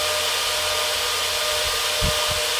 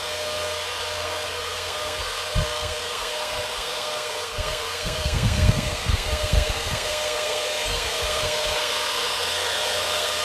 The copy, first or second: second